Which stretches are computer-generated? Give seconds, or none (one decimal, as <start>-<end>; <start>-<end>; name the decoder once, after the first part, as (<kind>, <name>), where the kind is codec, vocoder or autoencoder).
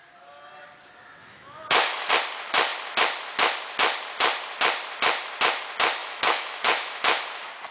1.2-2.1 (autoencoder, DAC-VAE); 6.0-7.0